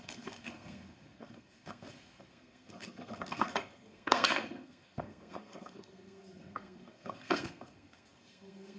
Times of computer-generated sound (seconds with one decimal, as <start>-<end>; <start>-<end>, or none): 0.0-8.8